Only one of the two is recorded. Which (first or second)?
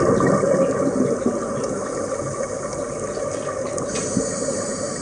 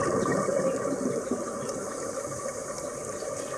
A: first